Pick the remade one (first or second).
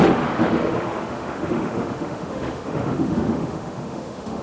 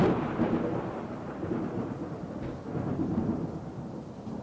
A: first